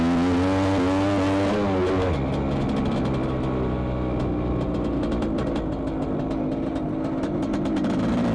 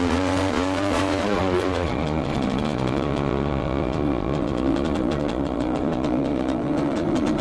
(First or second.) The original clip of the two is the first